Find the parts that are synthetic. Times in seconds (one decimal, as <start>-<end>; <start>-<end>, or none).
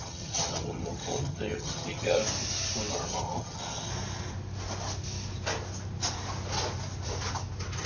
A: 0.0-2.2; 2.9-3.9